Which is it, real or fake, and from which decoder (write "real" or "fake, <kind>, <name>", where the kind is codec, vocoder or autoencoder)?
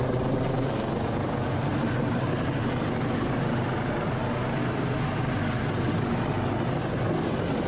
real